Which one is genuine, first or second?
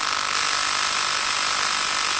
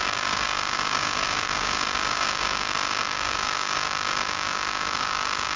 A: first